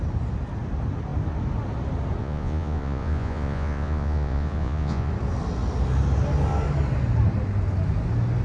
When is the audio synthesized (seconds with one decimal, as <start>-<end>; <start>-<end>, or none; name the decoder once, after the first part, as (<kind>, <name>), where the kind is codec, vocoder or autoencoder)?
2.2-5.1 (vocoder, Vocos)